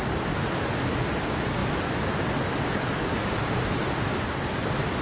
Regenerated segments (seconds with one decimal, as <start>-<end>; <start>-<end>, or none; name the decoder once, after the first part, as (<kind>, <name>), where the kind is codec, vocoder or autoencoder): none